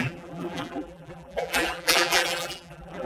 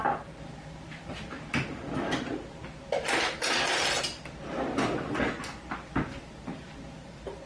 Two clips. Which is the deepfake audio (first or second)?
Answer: first